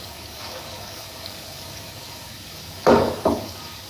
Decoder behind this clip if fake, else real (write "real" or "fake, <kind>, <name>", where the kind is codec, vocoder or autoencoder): fake, codec, DAC